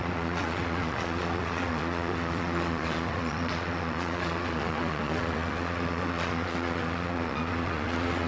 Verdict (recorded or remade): remade